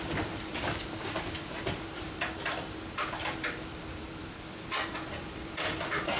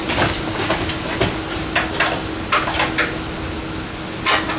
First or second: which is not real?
first